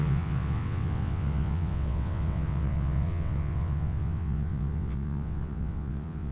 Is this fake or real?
fake